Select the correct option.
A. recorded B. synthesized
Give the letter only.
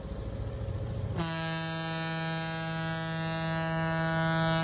A